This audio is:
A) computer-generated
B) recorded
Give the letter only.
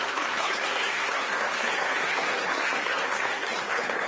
A